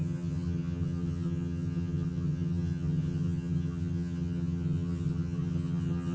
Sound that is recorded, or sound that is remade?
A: remade